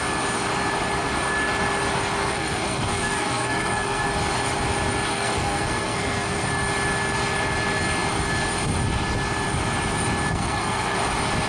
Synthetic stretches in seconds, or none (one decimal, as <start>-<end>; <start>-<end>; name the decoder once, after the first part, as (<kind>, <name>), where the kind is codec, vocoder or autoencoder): 2.2-4.1 (codec, SNAC); 5.1-6.5; 10.3-11.0